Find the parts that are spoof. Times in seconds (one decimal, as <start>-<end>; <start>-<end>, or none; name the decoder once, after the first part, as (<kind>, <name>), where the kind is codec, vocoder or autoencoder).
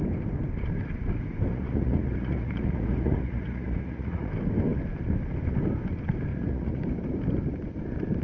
1.5-4.3 (vocoder, Vocos); 6.3-6.8